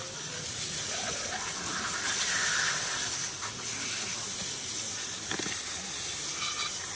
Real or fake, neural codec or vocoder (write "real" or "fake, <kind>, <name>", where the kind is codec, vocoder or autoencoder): real